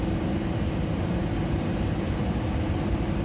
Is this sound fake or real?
real